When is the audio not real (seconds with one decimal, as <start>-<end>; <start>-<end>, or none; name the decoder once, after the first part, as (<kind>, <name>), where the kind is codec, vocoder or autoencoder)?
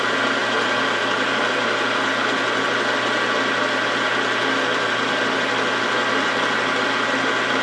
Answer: none